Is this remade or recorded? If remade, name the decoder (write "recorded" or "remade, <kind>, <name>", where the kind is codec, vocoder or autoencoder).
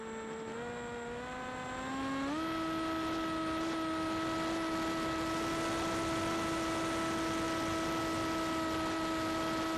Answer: recorded